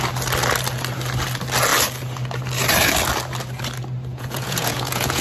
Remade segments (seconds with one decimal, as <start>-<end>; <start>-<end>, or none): 4.1-5.2